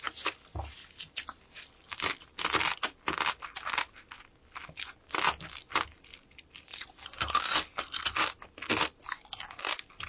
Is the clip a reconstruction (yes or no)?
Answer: no